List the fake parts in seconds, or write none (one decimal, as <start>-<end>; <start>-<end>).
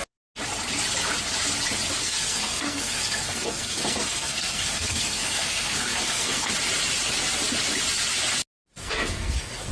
2.0-6.5; 8.8-9.7